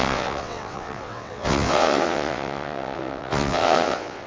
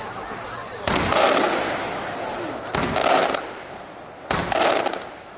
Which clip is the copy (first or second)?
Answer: first